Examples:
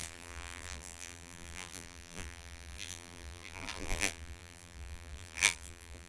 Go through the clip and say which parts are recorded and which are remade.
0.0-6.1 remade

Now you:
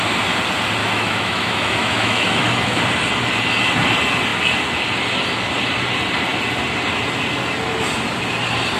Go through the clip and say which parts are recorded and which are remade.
0.0-0.8 recorded; 0.8-2.8 remade; 2.8-8.8 recorded

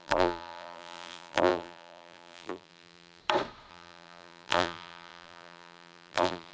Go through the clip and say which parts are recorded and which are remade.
0.0-3.2 remade; 3.2-3.7 recorded; 3.7-6.5 remade

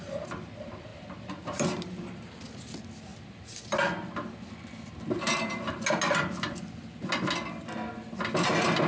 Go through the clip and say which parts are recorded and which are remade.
0.0-8.9 recorded

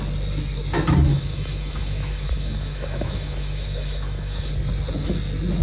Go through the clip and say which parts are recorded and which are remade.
0.0-1.1 recorded; 1.1-4.5 remade; 4.5-5.6 recorded

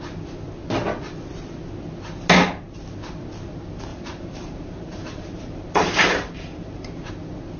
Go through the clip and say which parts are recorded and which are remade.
0.0-3.9 recorded; 3.9-7.1 remade; 7.1-7.6 recorded

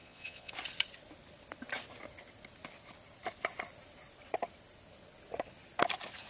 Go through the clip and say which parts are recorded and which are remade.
0.0-0.5 remade; 0.5-6.3 recorded

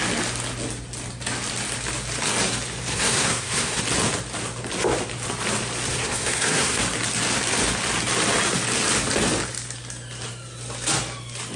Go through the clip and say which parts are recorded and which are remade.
0.0-2.9 recorded; 2.9-3.8 remade; 3.8-5.9 recorded; 5.9-6.8 remade; 6.8-11.6 recorded